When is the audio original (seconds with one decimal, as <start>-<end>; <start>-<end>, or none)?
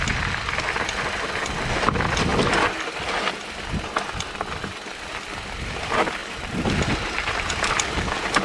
0.0-8.4